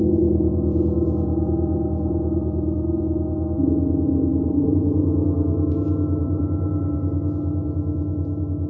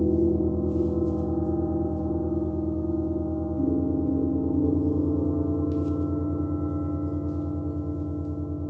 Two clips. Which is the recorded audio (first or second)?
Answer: second